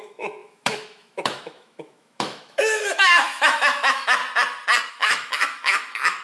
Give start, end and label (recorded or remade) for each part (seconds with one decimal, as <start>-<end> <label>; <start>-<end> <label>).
0.0-4.2 remade; 4.2-4.9 recorded; 4.9-6.2 remade